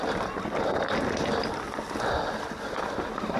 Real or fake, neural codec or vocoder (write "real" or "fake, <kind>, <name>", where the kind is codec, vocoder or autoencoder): real